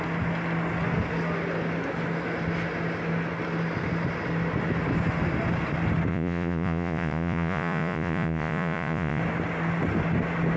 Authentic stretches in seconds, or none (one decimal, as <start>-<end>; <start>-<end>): 0.0-6.1; 9.2-10.6